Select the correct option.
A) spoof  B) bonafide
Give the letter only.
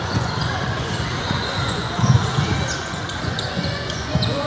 A